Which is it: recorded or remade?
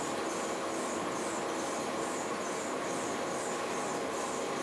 recorded